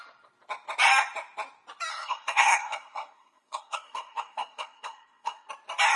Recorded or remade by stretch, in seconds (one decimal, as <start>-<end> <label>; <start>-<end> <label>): 0.0-1.9 recorded; 1.9-5.5 remade; 5.5-6.0 recorded